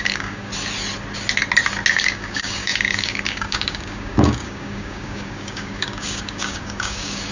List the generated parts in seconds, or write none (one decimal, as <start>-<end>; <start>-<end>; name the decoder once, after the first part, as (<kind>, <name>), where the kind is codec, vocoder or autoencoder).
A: 0.0-0.5 (codec, DAC); 1.9-7.3